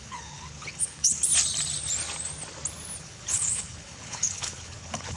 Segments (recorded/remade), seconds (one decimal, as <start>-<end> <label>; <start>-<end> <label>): 0.0-1.3 remade; 1.3-3.0 recorded; 3.0-5.2 remade